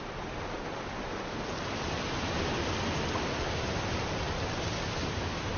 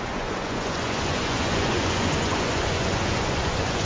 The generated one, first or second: second